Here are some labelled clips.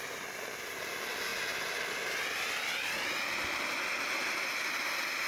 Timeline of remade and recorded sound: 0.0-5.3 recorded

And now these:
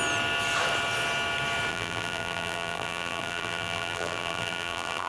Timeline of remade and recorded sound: 0.0-1.7 recorded; 1.7-5.1 remade

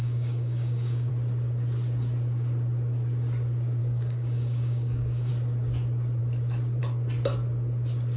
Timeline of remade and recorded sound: 0.0-1.1 remade; 1.1-3.8 recorded; 3.8-5.3 remade; 5.3-8.2 recorded

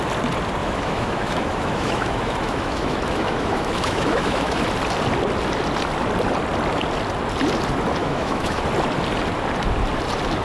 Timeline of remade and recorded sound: 0.0-0.6 recorded; 0.6-4.6 remade; 4.6-8.0 recorded; 8.0-8.6 remade; 8.6-10.4 recorded